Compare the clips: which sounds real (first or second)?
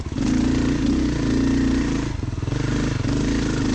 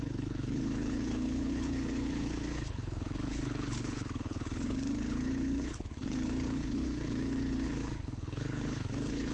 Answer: first